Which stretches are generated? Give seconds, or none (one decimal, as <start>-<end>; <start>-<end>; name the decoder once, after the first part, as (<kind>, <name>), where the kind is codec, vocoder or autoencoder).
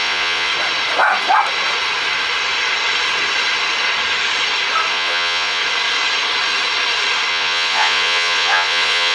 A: 0.0-0.5 (vocoder, Vocos); 4.9-5.6; 7.3-9.1